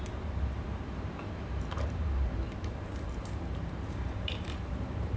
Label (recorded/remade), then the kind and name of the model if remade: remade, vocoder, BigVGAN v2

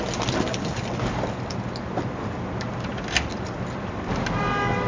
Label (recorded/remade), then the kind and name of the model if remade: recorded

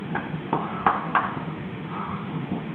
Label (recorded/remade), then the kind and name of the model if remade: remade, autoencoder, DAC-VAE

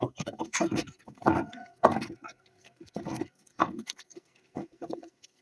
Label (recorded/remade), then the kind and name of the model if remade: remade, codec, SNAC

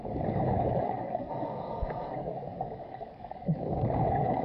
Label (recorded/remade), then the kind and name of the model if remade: remade, codec, DAC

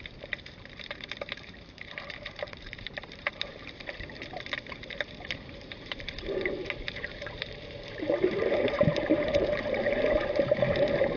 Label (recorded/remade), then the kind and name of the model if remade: remade, vocoder, BigVGAN v2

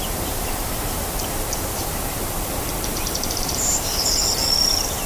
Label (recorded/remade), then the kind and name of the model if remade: remade, vocoder, BigVGAN v2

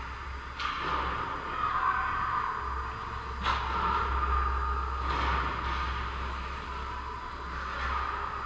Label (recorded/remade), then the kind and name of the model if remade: recorded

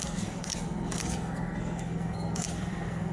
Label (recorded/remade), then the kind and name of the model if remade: remade, codec, SNAC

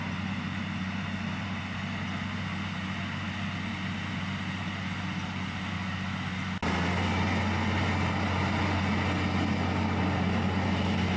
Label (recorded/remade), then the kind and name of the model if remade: recorded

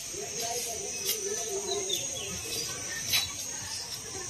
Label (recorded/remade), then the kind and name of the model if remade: remade, vocoder, BigVGAN v2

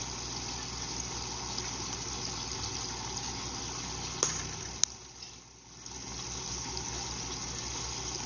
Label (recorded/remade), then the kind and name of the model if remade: recorded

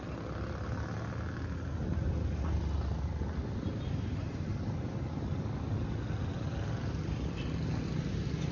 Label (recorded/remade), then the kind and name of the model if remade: recorded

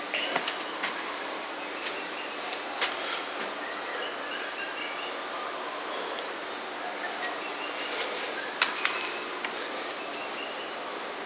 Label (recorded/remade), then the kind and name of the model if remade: recorded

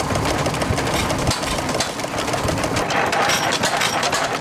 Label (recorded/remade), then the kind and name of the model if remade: recorded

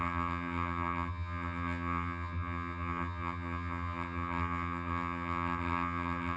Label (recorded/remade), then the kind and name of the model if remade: remade, vocoder, HiFi-GAN